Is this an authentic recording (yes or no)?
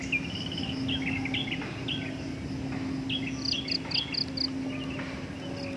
yes